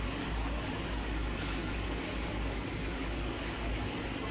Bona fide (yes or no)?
no